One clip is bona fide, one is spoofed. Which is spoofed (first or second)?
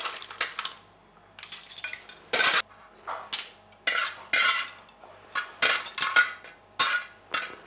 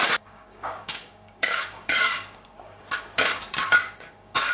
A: second